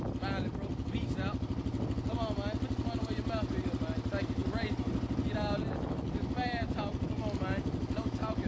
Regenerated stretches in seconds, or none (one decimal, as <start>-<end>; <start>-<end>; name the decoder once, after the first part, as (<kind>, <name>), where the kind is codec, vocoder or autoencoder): none